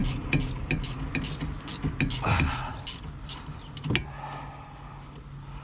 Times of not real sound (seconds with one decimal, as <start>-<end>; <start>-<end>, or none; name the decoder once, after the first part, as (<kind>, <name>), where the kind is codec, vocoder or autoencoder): none